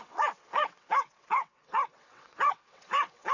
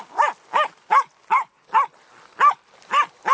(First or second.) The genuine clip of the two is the second